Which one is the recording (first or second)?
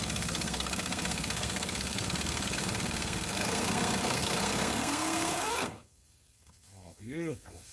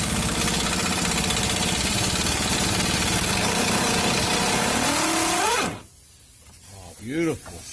second